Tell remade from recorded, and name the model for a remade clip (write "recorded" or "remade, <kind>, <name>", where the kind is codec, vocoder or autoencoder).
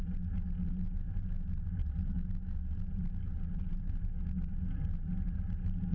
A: recorded